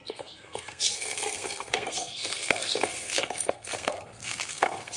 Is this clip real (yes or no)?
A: no